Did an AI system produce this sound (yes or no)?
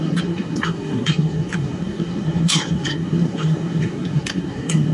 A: yes